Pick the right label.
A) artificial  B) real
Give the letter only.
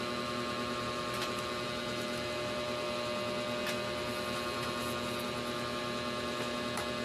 B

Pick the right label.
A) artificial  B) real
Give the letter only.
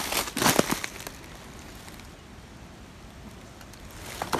B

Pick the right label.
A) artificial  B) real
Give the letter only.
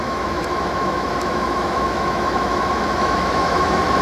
A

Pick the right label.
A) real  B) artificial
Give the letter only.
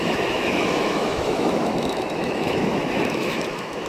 B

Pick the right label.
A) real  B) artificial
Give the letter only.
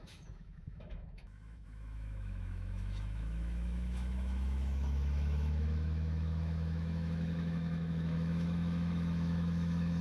B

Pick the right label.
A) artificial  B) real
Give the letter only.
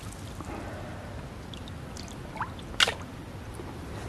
B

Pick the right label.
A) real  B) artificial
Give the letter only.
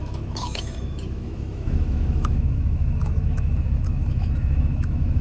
B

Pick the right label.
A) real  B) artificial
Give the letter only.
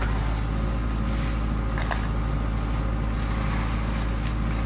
A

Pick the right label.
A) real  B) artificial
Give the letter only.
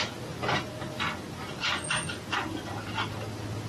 A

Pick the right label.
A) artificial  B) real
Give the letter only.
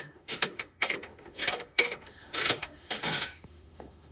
A